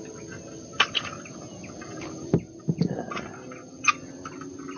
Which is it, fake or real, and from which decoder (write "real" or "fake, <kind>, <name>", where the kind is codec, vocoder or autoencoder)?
real